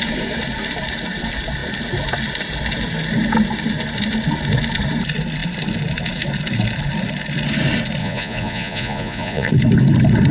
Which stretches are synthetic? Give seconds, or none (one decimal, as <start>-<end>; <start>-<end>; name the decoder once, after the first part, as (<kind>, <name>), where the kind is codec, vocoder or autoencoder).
8.0-9.5 (vocoder, Vocos)